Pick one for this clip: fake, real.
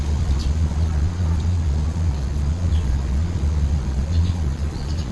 fake